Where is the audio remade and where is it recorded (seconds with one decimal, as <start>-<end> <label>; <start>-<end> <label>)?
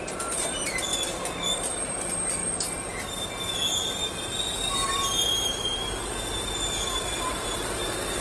0.0-0.9 remade; 0.9-1.7 recorded; 1.7-2.4 remade; 2.4-3.7 recorded; 3.7-8.2 remade